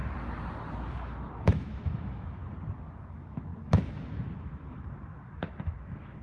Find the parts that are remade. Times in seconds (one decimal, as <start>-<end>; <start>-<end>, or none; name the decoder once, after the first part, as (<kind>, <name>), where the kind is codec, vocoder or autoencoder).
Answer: 1.0-2.4 (autoencoder, DAC-VAE); 3.0-6.2